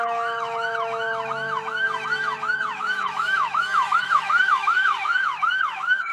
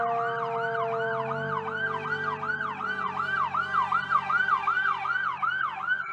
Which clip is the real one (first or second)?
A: second